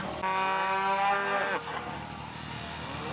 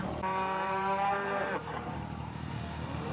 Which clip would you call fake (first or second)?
second